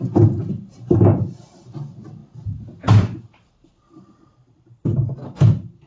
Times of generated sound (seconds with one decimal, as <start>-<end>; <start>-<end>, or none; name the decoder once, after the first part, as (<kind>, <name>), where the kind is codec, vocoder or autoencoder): 0.0-5.9 (vocoder, BigVGAN v2)

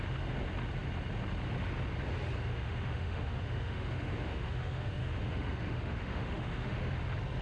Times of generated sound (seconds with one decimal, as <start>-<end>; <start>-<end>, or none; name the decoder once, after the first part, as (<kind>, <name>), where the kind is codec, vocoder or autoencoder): 2.5-6.9 (autoencoder, DAC-VAE)

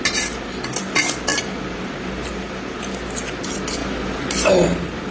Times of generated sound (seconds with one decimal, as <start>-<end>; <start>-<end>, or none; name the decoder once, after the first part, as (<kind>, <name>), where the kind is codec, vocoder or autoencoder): 1.3-2.8 (vocoder, BigVGAN v2)

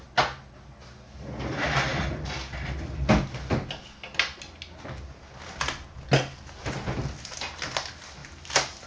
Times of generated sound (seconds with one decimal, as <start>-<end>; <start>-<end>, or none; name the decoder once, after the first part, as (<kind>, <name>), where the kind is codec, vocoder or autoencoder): 1.9-3.2 (vocoder, BigVGAN v2)

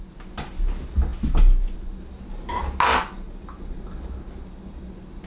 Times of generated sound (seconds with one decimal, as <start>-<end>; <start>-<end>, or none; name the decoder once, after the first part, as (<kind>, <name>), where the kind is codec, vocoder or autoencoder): none

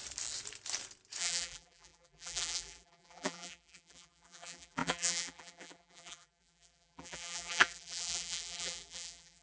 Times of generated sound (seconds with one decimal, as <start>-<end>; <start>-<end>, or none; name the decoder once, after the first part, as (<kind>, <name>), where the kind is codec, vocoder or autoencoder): 1.2-9.4 (vocoder, BigVGAN v2)

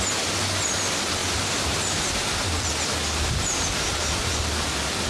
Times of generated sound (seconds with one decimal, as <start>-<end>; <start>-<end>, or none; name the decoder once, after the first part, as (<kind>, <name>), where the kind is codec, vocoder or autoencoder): none

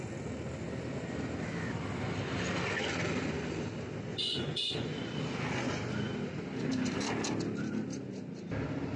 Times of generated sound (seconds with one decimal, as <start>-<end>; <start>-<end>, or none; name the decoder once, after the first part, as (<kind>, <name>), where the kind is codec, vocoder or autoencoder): 4.1-5.1 (vocoder, Vocos)